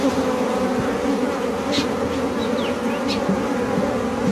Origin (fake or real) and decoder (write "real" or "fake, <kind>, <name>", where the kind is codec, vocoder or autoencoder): real